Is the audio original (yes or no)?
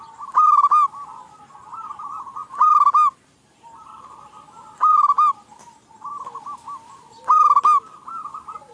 yes